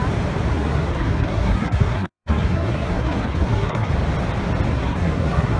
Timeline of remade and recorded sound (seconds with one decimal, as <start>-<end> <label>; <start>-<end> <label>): 0.0-0.5 recorded; 0.5-3.9 remade; 3.9-4.7 recorded; 4.7-5.6 remade